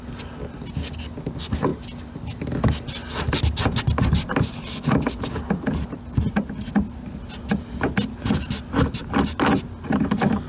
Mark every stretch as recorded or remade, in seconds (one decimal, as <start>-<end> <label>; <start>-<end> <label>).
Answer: 0.0-10.5 recorded